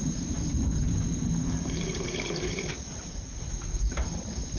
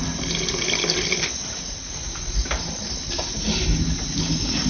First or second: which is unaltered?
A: second